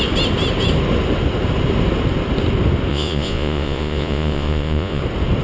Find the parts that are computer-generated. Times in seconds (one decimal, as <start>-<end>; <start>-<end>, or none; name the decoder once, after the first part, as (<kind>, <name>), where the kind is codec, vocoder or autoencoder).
2.9-5.0 (vocoder, Vocos)